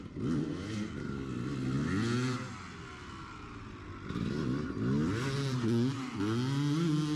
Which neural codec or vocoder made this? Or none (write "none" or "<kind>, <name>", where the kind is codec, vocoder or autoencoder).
none